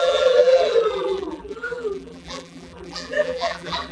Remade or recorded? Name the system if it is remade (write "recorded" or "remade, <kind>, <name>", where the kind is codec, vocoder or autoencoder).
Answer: remade, vocoder, BigVGAN v2